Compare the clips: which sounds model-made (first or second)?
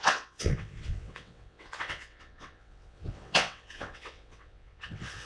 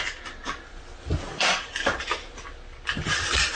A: first